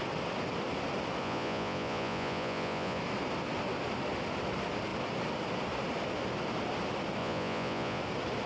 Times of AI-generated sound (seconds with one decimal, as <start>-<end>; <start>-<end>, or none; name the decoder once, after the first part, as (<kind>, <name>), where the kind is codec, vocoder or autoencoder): 1.2-3.0 (vocoder, Vocos); 7.2-8.0